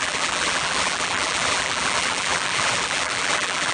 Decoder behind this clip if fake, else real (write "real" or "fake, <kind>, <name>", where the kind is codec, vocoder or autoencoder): fake, vocoder, BigVGAN v2